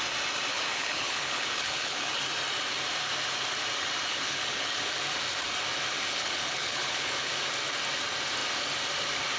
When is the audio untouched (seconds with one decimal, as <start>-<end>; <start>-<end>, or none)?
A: 0.0-0.5; 2.2-4.1; 4.8-6.1; 7.3-9.4